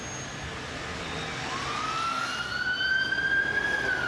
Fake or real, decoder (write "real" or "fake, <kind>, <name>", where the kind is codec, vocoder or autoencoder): real